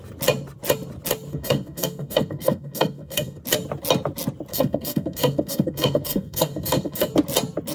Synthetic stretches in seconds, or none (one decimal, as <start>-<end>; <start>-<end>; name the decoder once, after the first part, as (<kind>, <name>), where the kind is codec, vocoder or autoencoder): 1.3-3.4 (codec, SNAC); 4.5-7.1